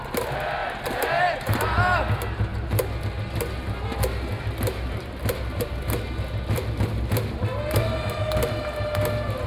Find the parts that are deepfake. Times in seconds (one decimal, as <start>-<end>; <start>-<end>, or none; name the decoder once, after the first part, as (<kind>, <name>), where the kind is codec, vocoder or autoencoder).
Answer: none